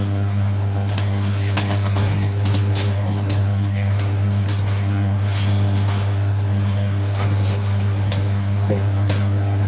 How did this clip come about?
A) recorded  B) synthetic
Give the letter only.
B